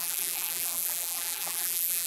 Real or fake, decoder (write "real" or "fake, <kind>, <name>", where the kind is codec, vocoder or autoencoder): fake, vocoder, BigVGAN v2